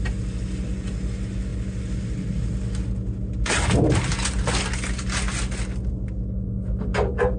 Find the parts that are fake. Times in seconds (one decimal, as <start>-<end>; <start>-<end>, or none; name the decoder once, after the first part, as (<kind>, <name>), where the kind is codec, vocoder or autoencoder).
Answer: none